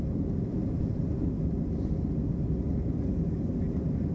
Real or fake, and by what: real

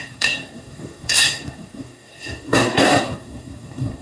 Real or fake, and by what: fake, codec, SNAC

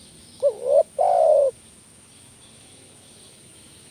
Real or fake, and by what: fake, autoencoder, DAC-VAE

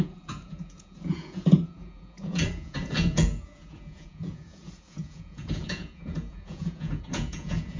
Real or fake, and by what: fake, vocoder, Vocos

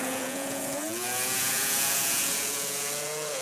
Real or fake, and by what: fake, vocoder, Vocos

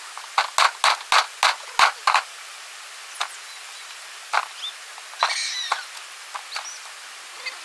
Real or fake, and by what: real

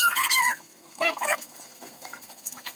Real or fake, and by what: fake, codec, SNAC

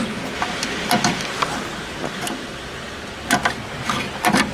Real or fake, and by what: real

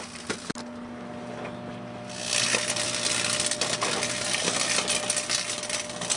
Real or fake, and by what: real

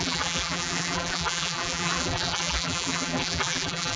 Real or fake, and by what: fake, vocoder, BigVGAN v2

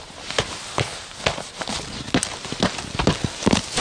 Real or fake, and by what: real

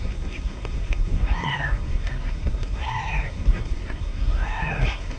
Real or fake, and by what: fake, codec, SNAC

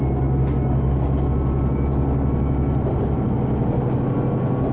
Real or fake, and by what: real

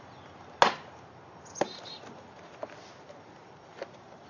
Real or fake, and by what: real